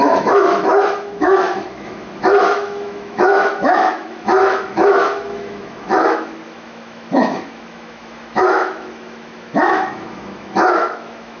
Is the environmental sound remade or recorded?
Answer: remade